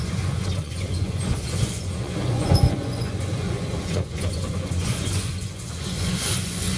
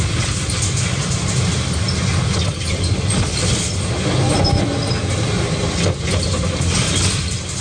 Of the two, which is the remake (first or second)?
first